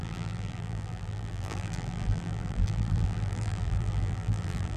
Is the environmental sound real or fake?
fake